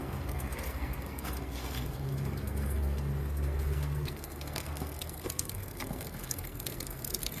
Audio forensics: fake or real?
fake